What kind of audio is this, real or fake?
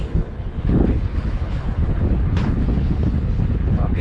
fake